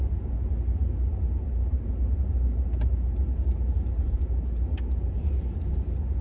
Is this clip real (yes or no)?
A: yes